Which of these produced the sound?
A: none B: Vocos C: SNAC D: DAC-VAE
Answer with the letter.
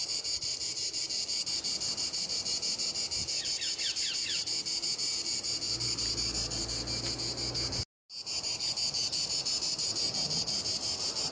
A